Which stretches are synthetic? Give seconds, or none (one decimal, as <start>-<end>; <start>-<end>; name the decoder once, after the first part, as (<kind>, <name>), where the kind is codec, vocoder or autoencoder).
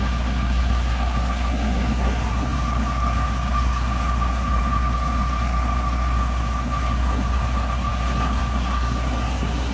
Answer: 0.0-9.7 (codec, SNAC)